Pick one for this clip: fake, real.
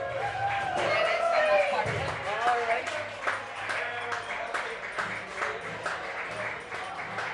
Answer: real